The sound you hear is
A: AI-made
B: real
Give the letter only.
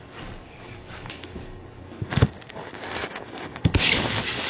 A